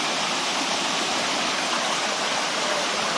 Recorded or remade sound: recorded